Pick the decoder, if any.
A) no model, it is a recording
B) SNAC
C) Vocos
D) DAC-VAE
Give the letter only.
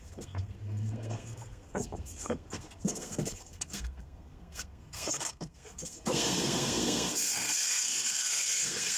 B